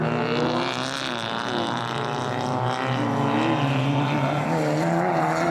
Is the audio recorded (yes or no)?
yes